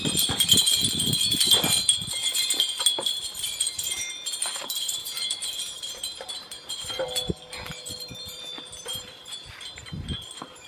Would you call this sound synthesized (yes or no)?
yes